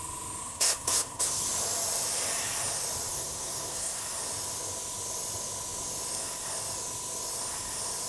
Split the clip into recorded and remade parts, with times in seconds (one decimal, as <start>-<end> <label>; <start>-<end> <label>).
0.0-0.4 recorded; 0.4-1.4 remade; 1.4-3.1 recorded; 3.1-4.0 remade; 4.0-8.1 recorded